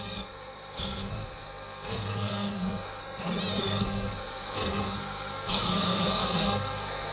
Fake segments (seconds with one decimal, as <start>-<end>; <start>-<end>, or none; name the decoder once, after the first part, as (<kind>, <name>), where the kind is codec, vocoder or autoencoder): 0.0-3.0 (codec, SNAC); 3.6-7.1